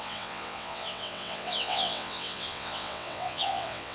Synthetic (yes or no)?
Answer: yes